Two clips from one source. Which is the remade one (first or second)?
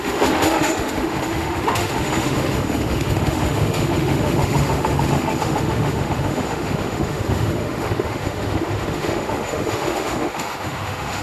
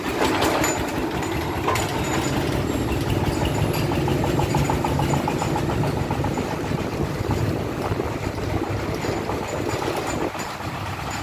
first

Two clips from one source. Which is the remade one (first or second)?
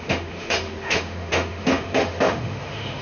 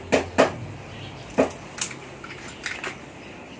first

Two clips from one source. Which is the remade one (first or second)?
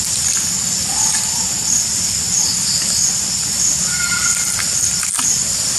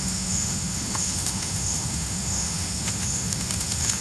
second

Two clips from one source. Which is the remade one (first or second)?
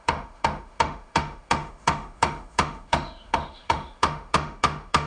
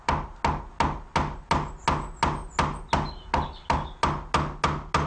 first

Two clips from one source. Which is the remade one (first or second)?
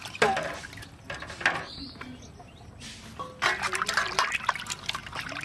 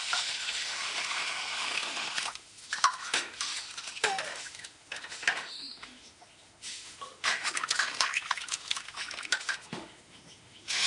second